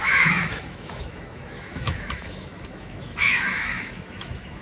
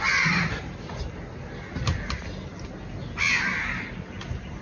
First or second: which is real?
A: second